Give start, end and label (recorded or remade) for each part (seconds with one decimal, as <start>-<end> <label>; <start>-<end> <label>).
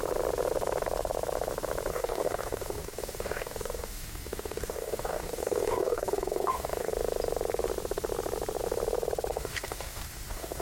0.0-1.9 recorded; 1.9-6.9 remade; 6.9-9.3 recorded; 9.3-10.6 remade